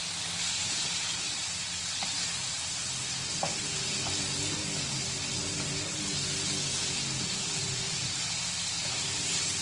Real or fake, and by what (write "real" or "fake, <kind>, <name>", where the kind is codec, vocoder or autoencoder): real